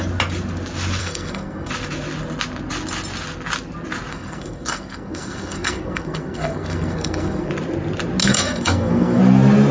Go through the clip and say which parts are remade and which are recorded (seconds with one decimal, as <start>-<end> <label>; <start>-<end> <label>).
0.0-1.0 recorded; 1.0-1.7 remade; 1.7-4.1 recorded; 4.1-7.5 remade; 7.5-8.2 recorded; 8.2-9.2 remade; 9.2-9.7 recorded